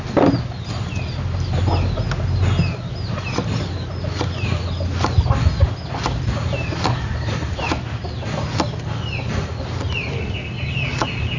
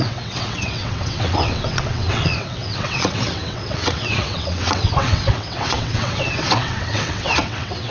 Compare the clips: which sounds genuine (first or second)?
first